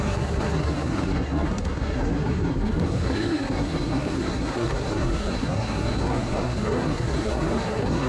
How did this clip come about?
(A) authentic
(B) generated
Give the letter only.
B